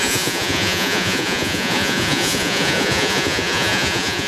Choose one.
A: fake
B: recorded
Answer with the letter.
A